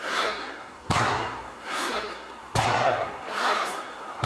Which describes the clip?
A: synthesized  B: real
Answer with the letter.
A